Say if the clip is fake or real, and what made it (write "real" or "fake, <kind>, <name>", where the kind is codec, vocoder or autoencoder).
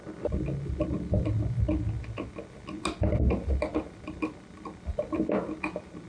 real